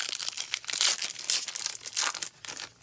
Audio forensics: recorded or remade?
recorded